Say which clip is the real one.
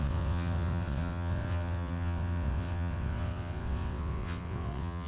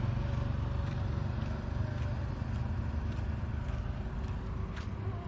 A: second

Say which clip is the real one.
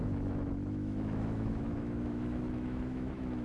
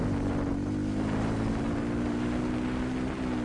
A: second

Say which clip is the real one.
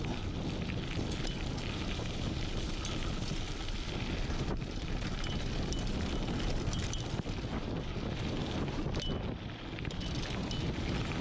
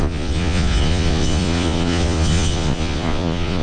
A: first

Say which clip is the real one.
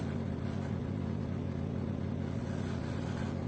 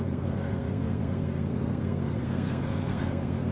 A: first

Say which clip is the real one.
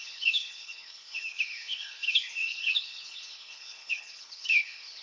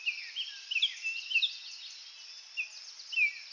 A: second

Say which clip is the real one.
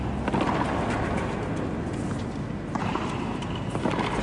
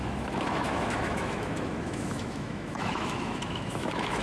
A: first